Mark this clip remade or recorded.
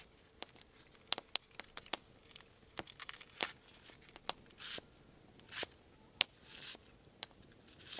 recorded